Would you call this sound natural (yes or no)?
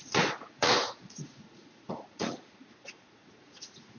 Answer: no